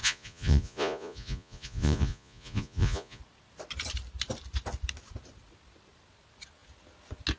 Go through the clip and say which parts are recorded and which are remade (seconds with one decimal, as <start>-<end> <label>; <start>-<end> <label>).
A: 0.0-3.2 remade; 3.2-7.4 recorded